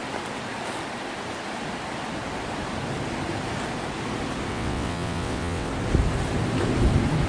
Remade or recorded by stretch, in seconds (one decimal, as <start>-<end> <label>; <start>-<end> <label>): 0.0-4.5 recorded; 4.5-5.7 remade; 5.7-7.3 recorded